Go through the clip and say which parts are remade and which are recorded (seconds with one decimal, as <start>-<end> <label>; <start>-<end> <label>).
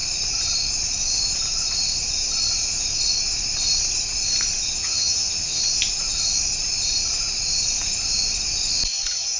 0.0-4.8 recorded; 4.8-5.6 remade; 5.6-9.4 recorded